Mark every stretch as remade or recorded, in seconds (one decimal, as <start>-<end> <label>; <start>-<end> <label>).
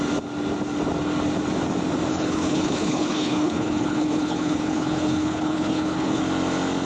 0.0-2.1 recorded; 2.1-6.2 remade; 6.2-6.9 recorded